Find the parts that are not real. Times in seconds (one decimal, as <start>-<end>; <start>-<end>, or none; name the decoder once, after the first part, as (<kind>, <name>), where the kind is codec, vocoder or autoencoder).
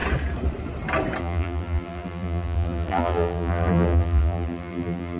1.2-5.2 (vocoder, BigVGAN v2)